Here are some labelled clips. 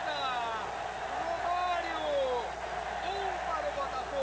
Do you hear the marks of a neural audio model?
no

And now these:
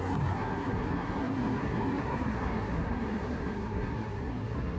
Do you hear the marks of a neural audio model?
yes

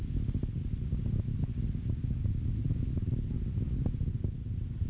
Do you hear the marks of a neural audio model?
no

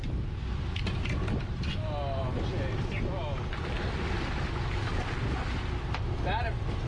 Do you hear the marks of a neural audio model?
no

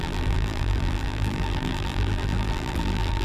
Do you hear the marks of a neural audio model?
yes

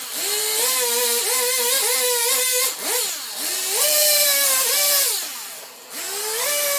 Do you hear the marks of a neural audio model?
no